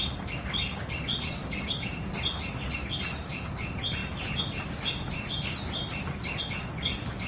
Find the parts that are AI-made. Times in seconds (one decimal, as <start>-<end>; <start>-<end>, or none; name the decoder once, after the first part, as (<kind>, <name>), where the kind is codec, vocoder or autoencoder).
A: 1.4-2.1 (codec, DAC)